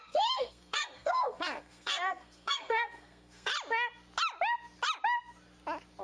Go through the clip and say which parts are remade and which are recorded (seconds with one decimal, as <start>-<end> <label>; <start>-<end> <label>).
0.0-3.5 remade; 3.5-6.0 recorded